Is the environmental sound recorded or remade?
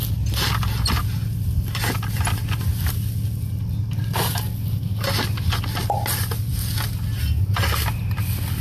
recorded